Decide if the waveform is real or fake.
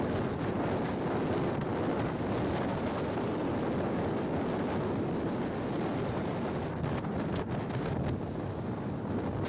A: real